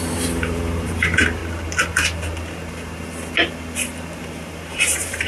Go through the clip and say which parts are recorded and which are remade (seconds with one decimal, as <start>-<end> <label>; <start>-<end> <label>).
0.0-1.4 remade; 1.4-4.2 recorded; 4.2-5.3 remade